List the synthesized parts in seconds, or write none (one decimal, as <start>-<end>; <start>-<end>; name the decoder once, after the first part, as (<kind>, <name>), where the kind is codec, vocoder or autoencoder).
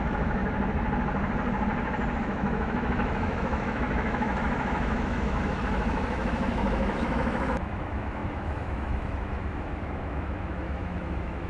0.0-0.4 (autoencoder, DAC-VAE); 2.2-11.5